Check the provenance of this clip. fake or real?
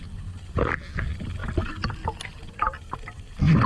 real